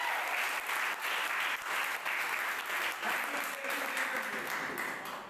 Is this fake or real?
real